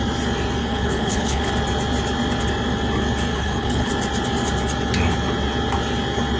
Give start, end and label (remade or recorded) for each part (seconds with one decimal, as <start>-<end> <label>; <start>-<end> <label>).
0.0-0.6 recorded; 0.6-1.5 remade; 1.5-3.3 recorded; 3.3-3.9 remade; 3.9-6.4 recorded